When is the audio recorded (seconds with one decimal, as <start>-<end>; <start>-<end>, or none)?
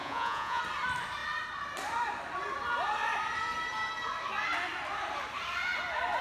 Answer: 0.6-6.2